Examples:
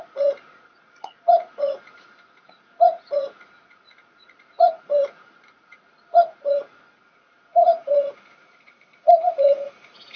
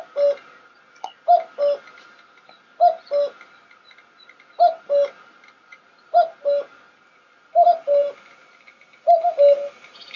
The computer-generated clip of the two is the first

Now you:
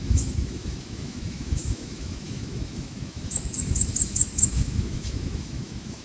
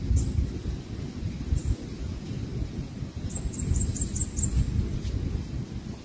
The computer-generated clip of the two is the first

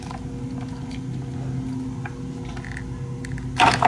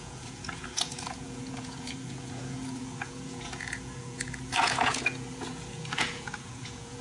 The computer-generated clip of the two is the second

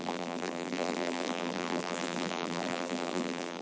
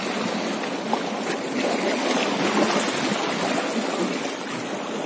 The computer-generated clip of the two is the first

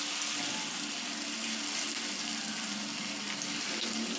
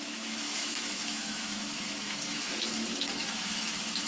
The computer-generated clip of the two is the second